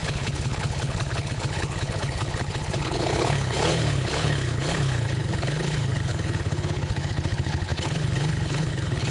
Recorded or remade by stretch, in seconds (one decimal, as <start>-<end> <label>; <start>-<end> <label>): 0.0-9.1 remade